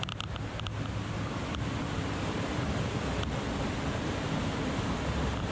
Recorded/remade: recorded